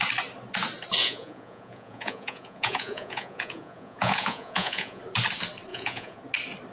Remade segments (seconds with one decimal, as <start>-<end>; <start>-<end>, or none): 1.0-5.0; 5.7-6.2